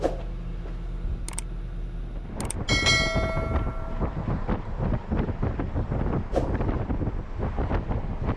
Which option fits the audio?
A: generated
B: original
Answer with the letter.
B